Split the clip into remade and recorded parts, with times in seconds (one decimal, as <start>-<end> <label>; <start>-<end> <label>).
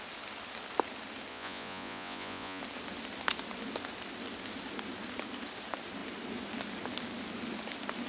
0.0-1.3 recorded; 1.3-2.6 remade; 2.6-8.1 recorded